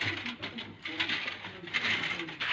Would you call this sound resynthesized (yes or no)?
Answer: no